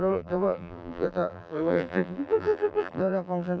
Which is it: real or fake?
fake